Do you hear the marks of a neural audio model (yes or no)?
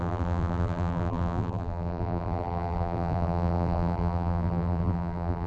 yes